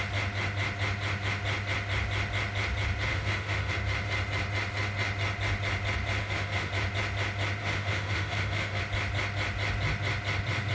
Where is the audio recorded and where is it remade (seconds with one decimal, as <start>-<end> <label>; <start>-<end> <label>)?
0.0-3.1 recorded; 3.1-3.7 remade; 3.7-6.2 recorded; 6.2-6.7 remade; 6.7-7.6 recorded; 7.6-8.8 remade; 8.8-10.7 recorded